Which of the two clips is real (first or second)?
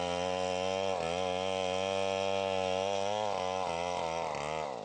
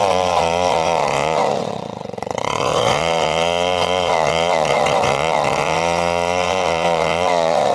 first